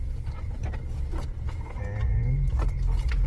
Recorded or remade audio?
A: recorded